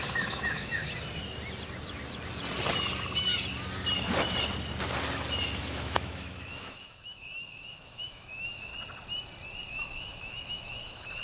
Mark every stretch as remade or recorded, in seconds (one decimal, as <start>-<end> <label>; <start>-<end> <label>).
0.0-0.8 remade; 0.8-5.6 recorded; 5.6-8.7 remade; 8.7-9.7 recorded; 9.7-11.2 remade